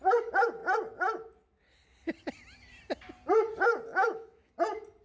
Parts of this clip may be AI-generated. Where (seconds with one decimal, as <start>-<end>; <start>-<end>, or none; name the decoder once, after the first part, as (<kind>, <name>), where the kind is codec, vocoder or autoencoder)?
3.9-4.5 (autoencoder, DAC-VAE)